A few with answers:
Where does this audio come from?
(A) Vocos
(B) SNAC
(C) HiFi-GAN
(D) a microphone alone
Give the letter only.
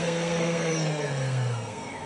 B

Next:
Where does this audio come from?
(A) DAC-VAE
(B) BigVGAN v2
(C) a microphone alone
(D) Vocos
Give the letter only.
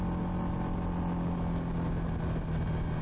C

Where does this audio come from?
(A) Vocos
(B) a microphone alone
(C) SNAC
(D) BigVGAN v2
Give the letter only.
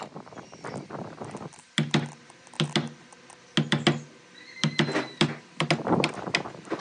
B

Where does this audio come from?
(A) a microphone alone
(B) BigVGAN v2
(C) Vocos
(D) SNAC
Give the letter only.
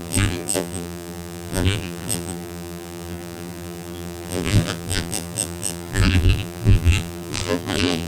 B